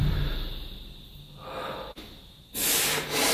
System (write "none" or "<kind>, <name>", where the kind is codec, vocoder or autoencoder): none